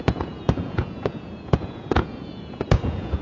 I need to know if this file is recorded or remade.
remade